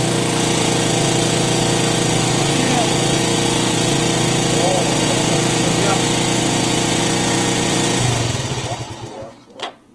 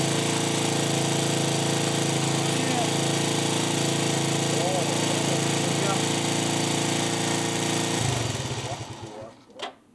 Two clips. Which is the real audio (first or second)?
second